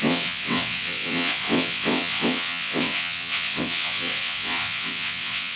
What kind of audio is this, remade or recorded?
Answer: remade